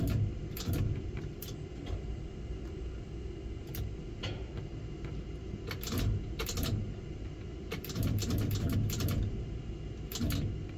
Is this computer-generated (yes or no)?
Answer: no